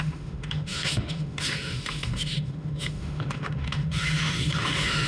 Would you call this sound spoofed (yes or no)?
yes